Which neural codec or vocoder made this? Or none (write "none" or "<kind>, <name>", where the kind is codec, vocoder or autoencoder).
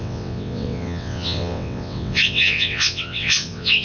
vocoder, WaveNeXt